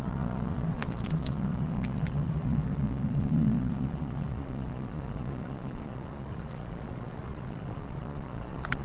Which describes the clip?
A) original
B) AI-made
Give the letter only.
B